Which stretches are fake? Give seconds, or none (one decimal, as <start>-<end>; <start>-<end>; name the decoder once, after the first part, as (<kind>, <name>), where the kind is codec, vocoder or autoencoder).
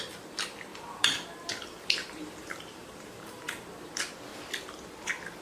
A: 0.7-3.9 (vocoder, BigVGAN v2)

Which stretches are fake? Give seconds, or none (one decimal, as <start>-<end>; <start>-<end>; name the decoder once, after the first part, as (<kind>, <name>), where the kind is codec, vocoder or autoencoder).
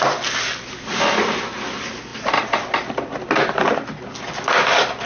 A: none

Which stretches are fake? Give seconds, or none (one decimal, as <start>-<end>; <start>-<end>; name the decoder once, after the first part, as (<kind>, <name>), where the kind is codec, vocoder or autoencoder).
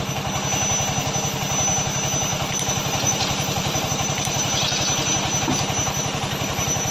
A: 2.3-3.9 (vocoder, BigVGAN v2); 5.8-6.5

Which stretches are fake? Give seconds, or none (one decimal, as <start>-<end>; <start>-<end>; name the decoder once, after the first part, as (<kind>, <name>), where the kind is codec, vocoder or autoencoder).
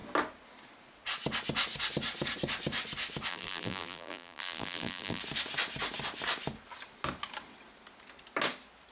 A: 3.3-5.2 (vocoder, BigVGAN v2)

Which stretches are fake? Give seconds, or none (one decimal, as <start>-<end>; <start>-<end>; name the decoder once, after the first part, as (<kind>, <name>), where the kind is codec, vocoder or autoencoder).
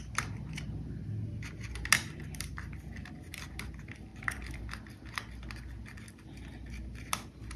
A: 4.1-4.6 (vocoder, BigVGAN v2)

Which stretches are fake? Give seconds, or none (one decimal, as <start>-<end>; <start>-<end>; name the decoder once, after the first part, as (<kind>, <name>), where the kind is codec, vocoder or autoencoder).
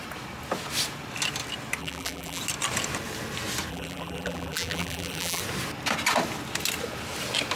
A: 1.8-2.4 (vocoder, BigVGAN v2); 3.7-5.4